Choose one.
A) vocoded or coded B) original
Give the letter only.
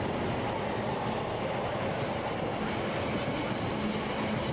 B